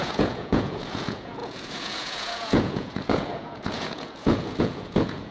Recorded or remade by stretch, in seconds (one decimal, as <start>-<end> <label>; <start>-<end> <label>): 0.0-5.3 remade